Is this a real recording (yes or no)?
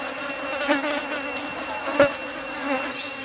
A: yes